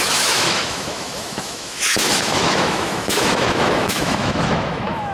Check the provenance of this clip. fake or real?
fake